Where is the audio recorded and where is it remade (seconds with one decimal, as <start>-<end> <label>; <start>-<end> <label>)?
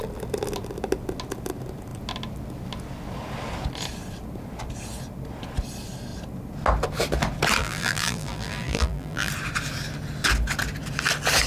0.0-7.6 recorded; 7.6-9.3 remade; 9.3-11.5 recorded